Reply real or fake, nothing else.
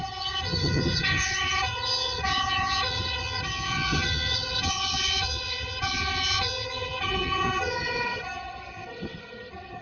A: fake